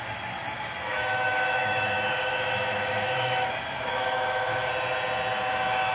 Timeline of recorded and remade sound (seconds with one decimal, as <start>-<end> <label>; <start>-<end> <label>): 0.0-0.9 recorded; 0.9-3.5 remade; 3.5-3.9 recorded; 3.9-4.7 remade; 4.7-5.9 recorded